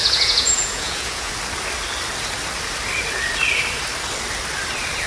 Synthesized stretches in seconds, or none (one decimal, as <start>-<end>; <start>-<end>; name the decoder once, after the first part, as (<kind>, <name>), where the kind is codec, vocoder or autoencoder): 0.0-1.3 (vocoder, Vocos)